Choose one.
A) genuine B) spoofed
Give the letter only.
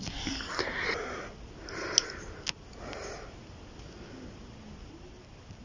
A